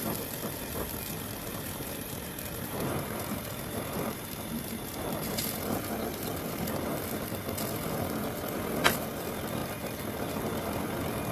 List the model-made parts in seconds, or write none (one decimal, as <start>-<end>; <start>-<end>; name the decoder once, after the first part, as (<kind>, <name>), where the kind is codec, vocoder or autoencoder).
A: 1.5-5.4 (vocoder, BigVGAN v2)

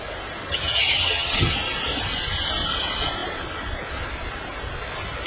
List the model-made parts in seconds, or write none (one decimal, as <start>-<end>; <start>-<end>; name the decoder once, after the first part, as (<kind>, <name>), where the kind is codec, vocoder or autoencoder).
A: 0.4-1.5 (vocoder, HiFi-GAN)